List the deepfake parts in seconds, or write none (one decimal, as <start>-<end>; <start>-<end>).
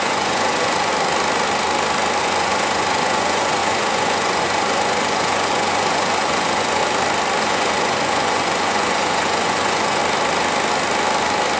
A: 0.0-0.9; 2.2-6.8; 7.4-10.0